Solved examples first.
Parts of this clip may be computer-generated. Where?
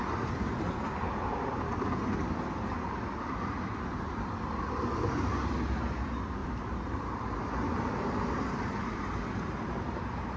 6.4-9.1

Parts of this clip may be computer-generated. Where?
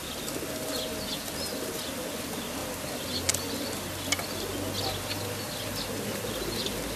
none